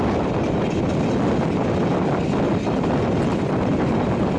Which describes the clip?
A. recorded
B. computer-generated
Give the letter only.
A